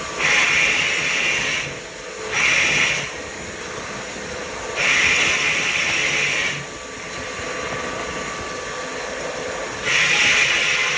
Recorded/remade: recorded